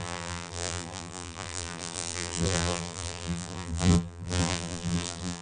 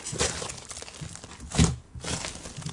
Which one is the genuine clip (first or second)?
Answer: second